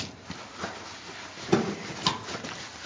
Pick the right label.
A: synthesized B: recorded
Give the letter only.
B